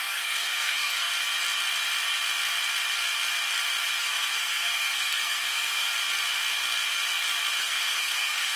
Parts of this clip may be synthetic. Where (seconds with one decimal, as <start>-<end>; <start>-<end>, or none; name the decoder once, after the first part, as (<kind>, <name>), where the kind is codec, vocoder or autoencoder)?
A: 0.0-1.1 (codec, SNAC); 4.0-5.9; 7.6-8.6